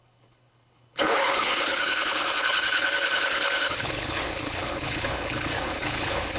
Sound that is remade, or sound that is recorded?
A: remade